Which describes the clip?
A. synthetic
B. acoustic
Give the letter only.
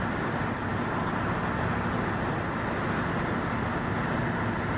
B